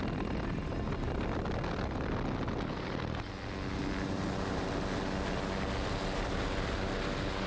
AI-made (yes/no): no